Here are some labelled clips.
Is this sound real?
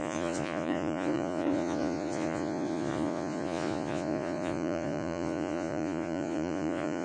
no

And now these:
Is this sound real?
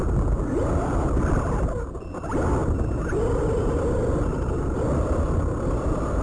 yes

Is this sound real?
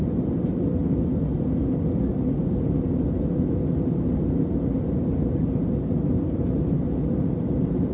yes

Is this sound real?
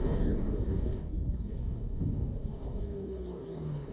no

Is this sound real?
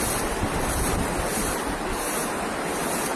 yes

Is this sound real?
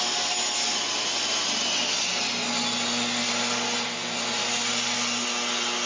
yes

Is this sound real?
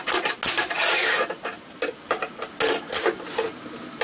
yes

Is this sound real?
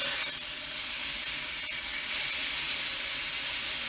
yes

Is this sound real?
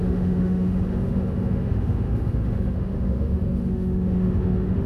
no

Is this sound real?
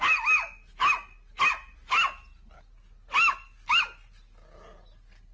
yes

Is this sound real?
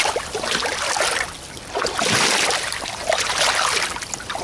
yes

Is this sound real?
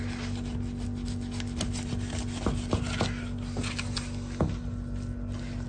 yes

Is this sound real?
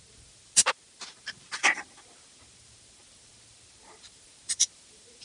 no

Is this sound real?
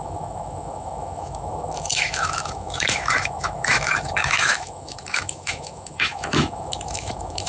no